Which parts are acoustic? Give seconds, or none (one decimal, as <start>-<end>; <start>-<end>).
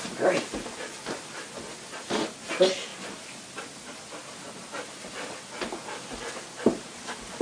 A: 0.0-7.4